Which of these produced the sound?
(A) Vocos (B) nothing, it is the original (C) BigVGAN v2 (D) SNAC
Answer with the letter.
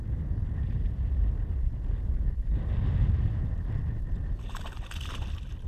B